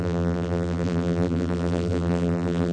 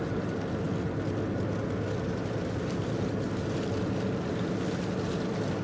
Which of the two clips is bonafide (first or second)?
second